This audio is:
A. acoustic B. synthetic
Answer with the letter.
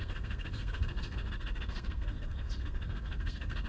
B